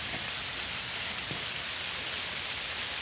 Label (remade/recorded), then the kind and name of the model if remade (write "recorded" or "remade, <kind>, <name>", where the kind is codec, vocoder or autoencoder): recorded